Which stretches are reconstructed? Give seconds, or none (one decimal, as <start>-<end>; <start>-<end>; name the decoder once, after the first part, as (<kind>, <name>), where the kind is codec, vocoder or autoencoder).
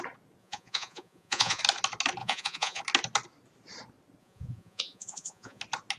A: 0.4-1.6 (vocoder, Vocos); 2.2-2.8; 4.2-5.6